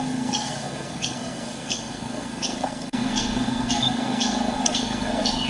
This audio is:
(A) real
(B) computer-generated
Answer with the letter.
B